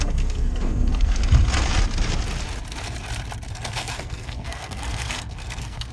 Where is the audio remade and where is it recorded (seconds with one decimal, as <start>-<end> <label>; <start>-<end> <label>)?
0.0-1.2 remade; 1.2-3.5 recorded; 3.5-5.9 remade